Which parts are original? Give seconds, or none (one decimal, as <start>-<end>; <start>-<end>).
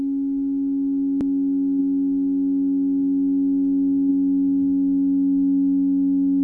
0.0-6.4